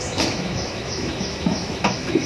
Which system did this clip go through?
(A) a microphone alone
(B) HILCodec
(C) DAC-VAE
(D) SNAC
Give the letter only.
C